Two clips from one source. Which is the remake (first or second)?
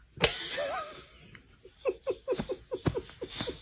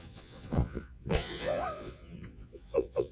second